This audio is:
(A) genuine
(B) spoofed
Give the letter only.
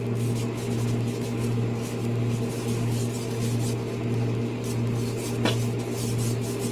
A